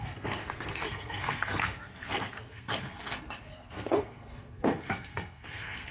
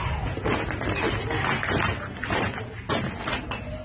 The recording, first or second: second